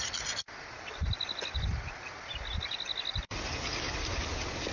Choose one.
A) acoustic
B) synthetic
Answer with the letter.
A